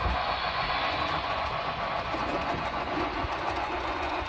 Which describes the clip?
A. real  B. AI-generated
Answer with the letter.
B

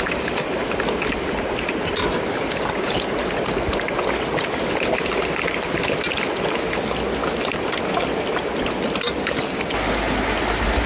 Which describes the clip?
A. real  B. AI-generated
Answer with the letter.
A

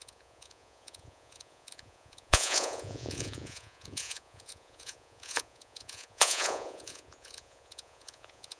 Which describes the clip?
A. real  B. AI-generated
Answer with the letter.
B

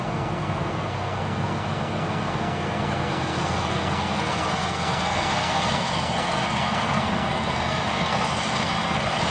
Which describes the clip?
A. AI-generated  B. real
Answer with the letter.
A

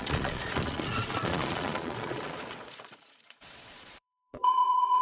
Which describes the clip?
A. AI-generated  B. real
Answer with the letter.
A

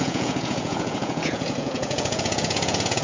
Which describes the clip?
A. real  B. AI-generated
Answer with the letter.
B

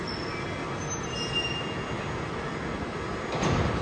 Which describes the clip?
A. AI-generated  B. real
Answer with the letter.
B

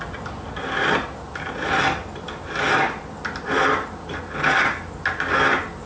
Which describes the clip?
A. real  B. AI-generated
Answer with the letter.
A